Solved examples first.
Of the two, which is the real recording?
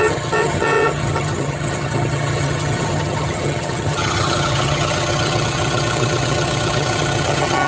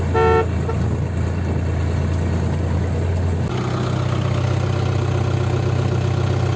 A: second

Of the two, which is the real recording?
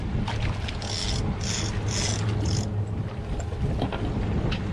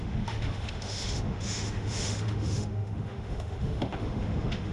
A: first